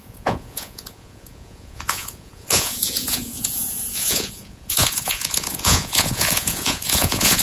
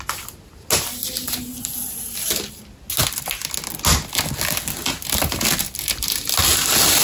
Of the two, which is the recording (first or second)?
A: second